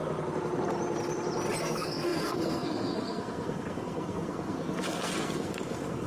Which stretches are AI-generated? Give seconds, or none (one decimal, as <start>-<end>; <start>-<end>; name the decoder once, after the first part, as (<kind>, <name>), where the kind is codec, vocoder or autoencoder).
1.6-6.1 (codec, SNAC)